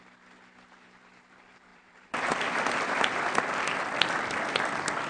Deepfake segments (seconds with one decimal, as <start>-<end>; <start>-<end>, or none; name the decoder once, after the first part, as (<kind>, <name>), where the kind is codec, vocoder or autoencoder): 1.7-4.4 (vocoder, BigVGAN v2)